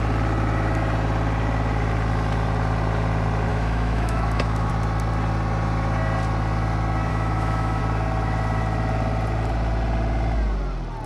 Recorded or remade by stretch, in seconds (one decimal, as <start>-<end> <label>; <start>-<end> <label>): 0.0-3.5 recorded; 3.5-4.7 remade; 4.7-7.1 recorded; 7.1-7.8 remade; 7.8-11.1 recorded